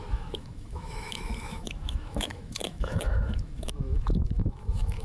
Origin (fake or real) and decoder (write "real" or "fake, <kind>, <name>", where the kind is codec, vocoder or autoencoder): fake, autoencoder, DAC-VAE